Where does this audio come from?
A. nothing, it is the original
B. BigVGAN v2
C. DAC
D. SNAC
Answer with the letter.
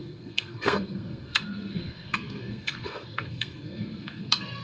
D